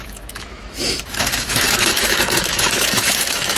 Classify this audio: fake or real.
fake